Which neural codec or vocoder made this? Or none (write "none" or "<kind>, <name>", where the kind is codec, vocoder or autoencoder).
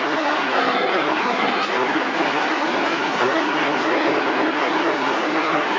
codec, SNAC